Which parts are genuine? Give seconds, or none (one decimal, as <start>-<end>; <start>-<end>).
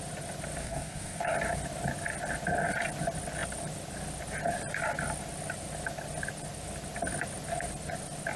0.0-0.6; 1.2-8.4